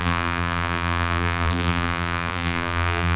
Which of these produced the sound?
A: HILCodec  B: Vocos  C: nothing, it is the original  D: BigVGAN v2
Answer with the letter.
D